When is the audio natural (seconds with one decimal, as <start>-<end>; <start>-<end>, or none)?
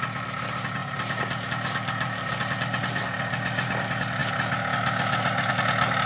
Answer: 0.0-6.1